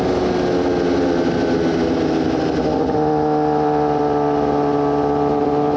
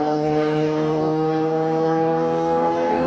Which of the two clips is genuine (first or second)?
first